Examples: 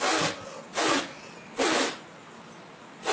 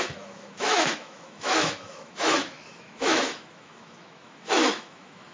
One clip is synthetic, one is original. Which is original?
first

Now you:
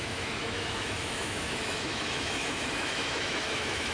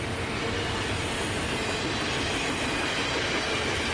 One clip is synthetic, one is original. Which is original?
second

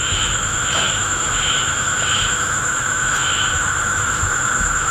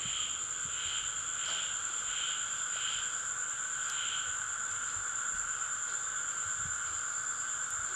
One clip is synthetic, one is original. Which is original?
second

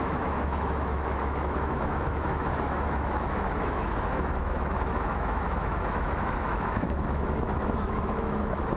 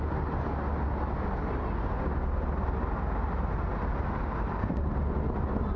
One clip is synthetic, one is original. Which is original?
second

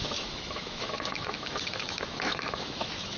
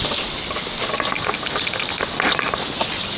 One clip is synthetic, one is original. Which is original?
second